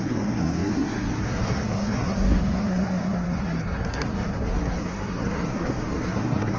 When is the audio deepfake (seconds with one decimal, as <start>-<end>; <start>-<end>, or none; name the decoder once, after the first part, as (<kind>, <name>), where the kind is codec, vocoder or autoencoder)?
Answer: 0.0-6.6 (codec, SNAC)